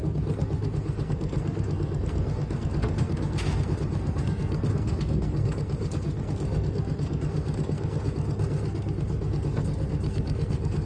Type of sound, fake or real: fake